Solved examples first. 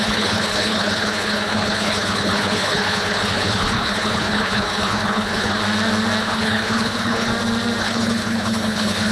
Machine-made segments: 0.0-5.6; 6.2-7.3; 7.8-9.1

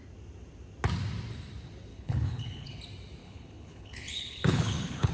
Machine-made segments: 1.9-2.8; 3.2-5.1

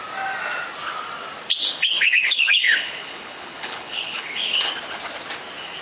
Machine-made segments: 1.6-4.7